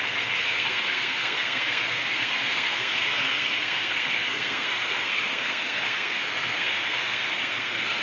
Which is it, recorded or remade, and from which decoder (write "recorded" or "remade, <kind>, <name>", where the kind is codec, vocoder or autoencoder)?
remade, codec, SNAC